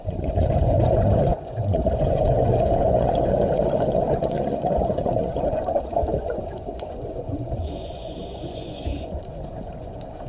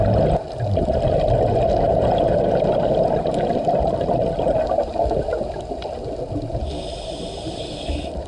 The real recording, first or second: second